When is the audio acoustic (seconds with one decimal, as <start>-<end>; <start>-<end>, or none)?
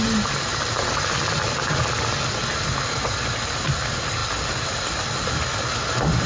0.0-6.3